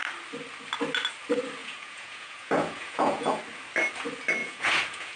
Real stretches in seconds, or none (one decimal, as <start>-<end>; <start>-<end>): 0.0-1.6; 3.4-4.4